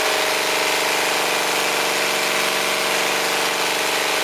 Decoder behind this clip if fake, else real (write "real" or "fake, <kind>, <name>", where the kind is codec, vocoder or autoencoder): real